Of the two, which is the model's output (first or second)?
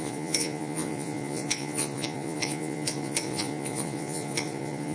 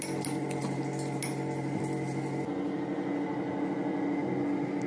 first